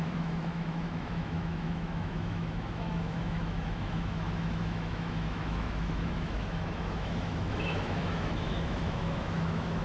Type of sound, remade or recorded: remade